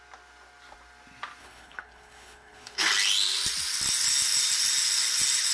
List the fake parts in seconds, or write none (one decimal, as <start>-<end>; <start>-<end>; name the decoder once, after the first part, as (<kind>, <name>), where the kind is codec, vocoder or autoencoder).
1.4-2.9 (codec, HILCodec)